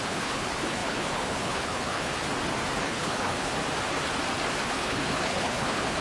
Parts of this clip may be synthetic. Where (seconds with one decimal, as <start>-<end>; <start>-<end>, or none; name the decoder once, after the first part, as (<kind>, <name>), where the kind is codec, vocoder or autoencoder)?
0.0-2.2 (codec, HILCodec); 2.8-3.6; 4.6-6.0